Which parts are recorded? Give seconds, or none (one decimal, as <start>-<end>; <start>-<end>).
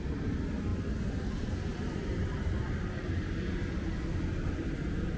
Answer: 0.0-5.2